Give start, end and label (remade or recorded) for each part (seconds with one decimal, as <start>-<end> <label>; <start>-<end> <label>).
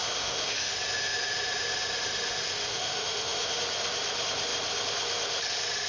0.0-0.7 remade; 0.7-2.7 recorded; 2.7-3.6 remade; 3.6-5.9 recorded